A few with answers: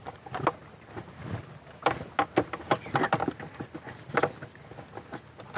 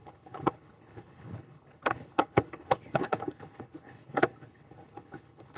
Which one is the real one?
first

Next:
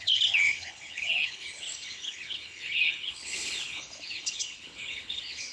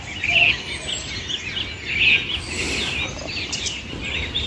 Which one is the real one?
second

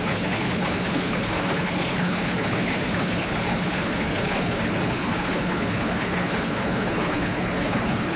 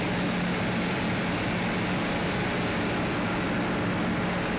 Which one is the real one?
second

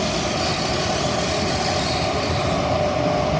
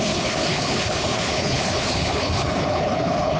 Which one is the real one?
first